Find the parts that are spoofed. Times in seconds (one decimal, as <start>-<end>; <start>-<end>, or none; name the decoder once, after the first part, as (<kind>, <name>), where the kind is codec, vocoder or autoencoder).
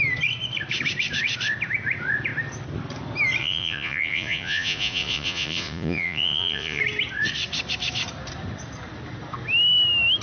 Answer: 3.4-6.8 (vocoder, Vocos)